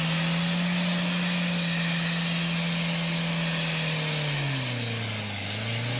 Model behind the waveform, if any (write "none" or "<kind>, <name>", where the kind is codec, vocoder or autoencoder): none